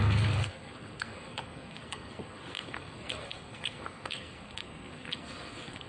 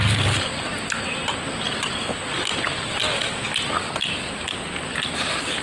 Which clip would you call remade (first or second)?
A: first